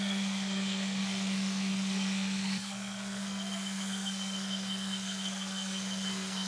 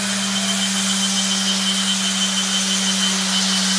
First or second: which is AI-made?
first